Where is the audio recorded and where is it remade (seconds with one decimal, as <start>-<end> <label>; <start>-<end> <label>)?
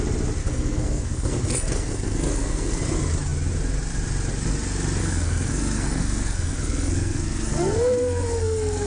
0.0-0.4 recorded; 0.4-2.8 remade; 2.8-5.0 recorded; 5.0-8.9 remade